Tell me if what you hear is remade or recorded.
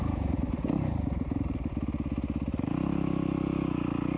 recorded